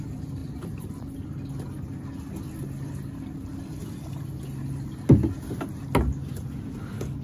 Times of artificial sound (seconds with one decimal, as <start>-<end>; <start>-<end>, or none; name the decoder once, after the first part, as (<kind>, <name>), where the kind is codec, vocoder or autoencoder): none

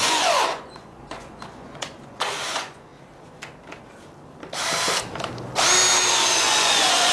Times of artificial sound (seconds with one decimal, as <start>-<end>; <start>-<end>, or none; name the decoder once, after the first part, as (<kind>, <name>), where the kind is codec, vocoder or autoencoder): 0.0-2.9 (vocoder, Vocos); 6.1-7.1

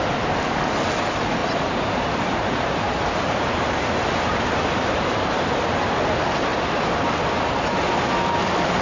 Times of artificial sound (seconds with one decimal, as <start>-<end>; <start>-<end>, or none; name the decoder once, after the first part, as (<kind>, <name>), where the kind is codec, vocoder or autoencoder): 1.4-5.5 (vocoder, BigVGAN v2)

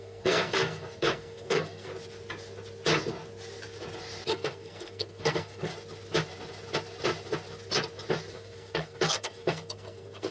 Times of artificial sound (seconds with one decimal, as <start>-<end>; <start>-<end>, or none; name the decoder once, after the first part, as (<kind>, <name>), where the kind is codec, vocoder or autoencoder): 0.0-1.9 (codec, SNAC); 4.3-5.7; 8.3-10.3